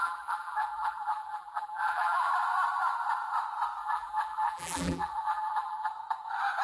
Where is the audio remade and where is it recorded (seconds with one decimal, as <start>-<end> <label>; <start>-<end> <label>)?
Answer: 0.0-2.3 remade; 2.3-3.8 recorded; 3.8-5.9 remade; 5.9-6.6 recorded